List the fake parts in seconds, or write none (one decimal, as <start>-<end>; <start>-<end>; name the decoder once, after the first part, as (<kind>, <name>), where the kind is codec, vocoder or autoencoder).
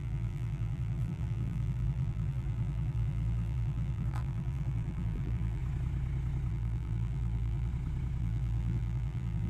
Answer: 0.0-5.6 (vocoder, BigVGAN v2); 6.5-7.7; 8.2-9.5